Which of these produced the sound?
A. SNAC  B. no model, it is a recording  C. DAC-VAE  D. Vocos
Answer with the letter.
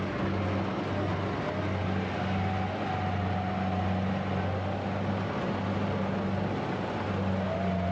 B